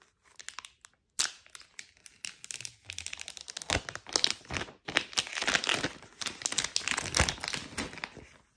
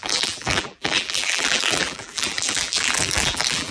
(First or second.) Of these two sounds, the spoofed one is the second